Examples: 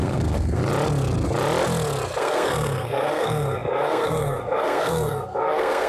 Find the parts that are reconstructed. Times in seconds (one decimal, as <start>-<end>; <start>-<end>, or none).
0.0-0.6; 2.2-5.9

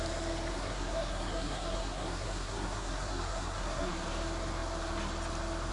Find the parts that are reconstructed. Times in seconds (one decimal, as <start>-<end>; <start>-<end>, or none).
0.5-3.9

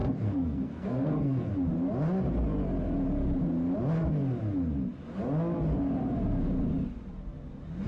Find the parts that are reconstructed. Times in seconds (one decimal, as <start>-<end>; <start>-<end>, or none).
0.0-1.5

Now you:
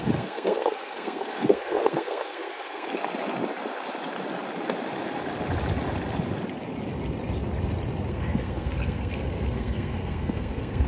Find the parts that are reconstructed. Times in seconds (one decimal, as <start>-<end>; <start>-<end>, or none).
0.0-2.9; 8.1-10.9

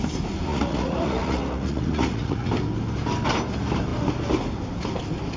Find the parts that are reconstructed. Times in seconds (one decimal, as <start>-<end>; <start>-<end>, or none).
0.5-2.5

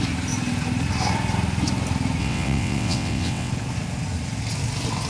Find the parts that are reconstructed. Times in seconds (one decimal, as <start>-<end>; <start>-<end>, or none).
2.2-3.5